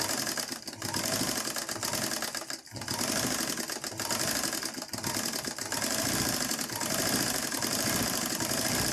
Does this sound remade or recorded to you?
recorded